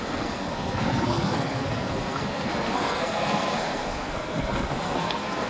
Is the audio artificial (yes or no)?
yes